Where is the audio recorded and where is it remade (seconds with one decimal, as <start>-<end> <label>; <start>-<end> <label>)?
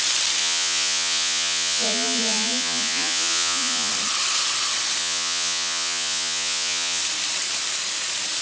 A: 0.0-0.4 recorded; 0.4-3.9 remade; 3.9-5.0 recorded; 5.0-7.0 remade; 7.0-8.4 recorded